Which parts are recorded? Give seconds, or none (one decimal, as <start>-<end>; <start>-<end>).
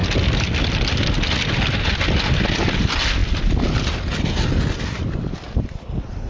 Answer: 0.0-6.3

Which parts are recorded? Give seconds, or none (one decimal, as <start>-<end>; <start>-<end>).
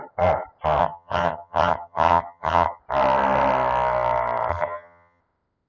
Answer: 0.0-0.8; 2.8-4.5; 5.2-5.7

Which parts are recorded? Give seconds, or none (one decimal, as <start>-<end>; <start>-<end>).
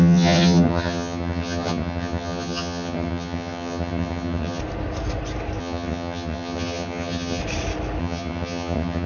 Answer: 4.6-5.6; 7.4-8.0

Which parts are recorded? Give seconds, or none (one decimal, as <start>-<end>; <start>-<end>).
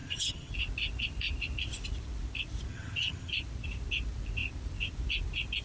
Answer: 0.5-2.7; 3.3-5.6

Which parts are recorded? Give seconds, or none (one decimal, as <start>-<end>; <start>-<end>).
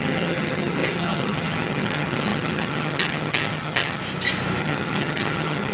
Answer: 4.0-4.6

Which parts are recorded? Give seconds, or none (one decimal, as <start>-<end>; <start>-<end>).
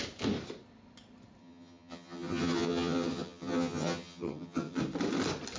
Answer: 0.0-1.4; 4.8-5.6